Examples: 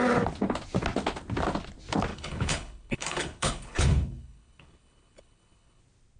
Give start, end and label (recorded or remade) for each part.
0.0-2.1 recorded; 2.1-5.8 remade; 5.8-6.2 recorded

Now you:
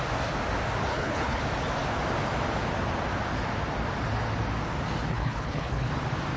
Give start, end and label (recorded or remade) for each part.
0.0-0.9 recorded; 0.9-1.4 remade; 1.4-5.1 recorded; 5.1-5.9 remade; 5.9-6.4 recorded

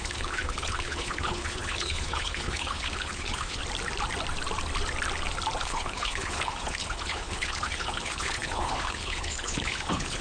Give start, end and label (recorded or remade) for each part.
0.0-3.6 remade; 3.6-5.6 recorded; 5.6-10.2 remade

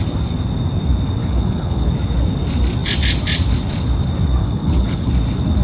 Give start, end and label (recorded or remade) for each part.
0.0-1.2 recorded; 1.2-1.9 remade; 1.9-4.4 recorded; 4.4-5.1 remade; 5.1-5.6 recorded

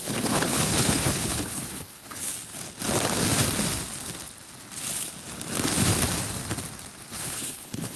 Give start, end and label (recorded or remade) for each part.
0.0-2.3 remade; 2.3-7.1 recorded; 7.1-8.0 remade

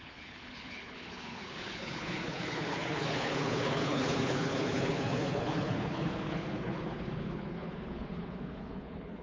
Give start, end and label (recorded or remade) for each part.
0.0-9.2 remade